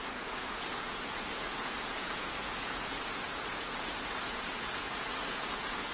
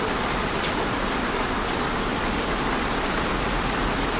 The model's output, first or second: first